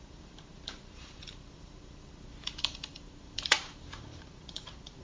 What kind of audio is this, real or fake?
fake